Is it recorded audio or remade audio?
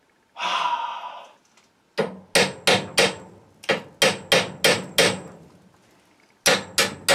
recorded